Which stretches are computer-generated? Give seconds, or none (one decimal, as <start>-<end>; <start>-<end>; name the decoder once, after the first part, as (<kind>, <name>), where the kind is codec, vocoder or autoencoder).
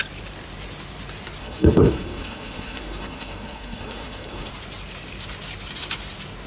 1.4-4.5 (codec, SNAC)